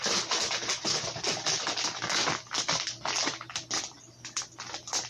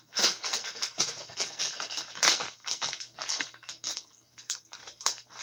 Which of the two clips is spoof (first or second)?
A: second